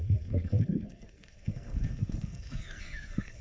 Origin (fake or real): fake